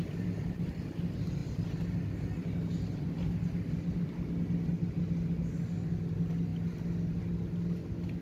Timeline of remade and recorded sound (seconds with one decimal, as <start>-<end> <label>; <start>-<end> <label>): 0.0-8.2 recorded